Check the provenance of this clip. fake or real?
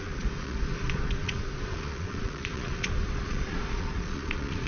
fake